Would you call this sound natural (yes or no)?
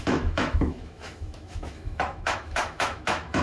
no